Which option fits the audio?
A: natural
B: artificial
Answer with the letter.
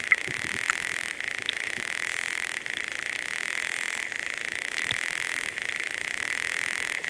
A